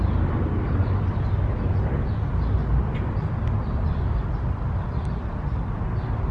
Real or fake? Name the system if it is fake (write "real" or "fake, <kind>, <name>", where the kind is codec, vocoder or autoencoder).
real